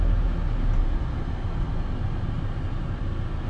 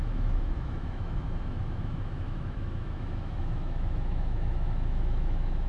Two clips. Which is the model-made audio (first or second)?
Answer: second